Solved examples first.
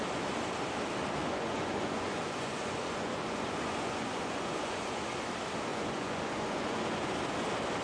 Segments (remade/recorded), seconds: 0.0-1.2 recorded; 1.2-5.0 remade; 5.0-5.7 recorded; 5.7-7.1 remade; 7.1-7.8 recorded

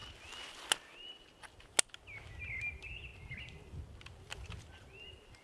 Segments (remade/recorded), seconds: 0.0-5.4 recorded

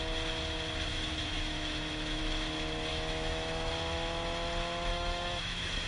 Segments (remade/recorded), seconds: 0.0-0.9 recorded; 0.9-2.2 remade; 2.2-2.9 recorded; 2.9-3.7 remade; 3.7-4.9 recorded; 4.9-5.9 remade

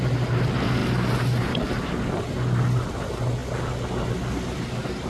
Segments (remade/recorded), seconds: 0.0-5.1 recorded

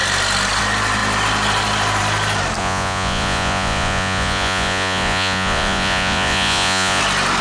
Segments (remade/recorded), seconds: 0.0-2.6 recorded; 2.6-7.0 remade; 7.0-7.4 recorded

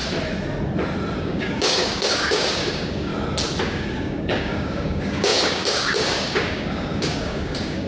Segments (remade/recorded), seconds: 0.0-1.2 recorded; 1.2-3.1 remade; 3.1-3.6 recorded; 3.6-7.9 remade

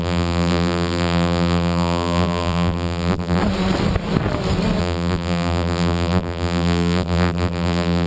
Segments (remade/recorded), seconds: 0.0-3.4 remade; 3.4-4.8 recorded; 4.8-8.1 remade